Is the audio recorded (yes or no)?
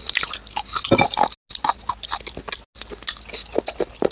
yes